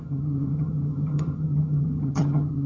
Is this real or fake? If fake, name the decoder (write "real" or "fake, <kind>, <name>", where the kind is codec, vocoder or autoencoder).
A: fake, vocoder, HiFi-GAN